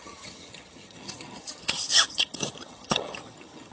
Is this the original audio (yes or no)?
no